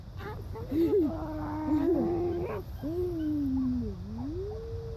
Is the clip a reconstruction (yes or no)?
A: yes